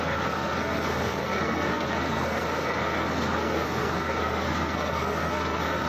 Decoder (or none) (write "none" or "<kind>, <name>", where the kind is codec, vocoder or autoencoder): codec, SNAC